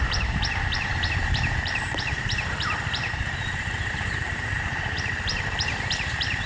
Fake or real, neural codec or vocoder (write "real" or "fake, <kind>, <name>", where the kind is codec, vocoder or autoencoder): fake, vocoder, BigVGAN v2